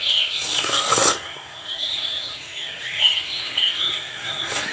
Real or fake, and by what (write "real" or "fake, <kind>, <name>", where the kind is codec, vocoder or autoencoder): fake, codec, SNAC